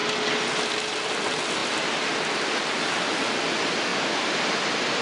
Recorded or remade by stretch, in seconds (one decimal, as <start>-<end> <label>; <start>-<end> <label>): 0.0-3.9 recorded; 3.9-4.5 remade; 4.5-5.0 recorded